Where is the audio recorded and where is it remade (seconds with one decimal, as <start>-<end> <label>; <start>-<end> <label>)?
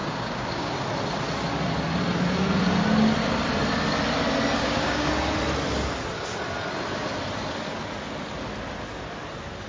0.0-0.7 remade; 0.7-4.6 recorded; 4.6-5.1 remade; 5.1-9.7 recorded